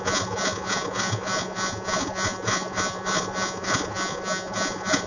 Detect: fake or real fake